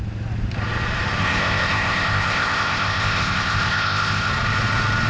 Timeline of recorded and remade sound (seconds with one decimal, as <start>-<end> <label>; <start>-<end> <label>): 0.0-1.2 recorded; 1.2-4.3 remade; 4.3-5.1 recorded